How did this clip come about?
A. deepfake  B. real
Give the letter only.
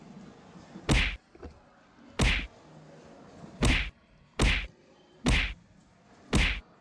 B